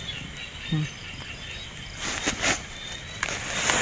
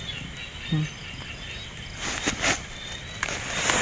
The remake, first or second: first